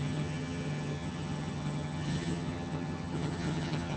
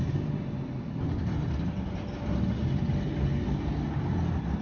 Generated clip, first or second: first